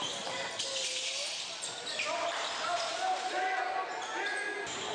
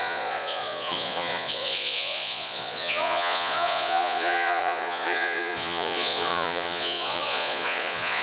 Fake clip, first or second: second